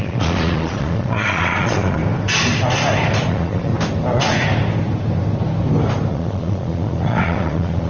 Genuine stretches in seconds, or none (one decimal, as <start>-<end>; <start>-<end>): 2.0-3.3; 3.7-6.1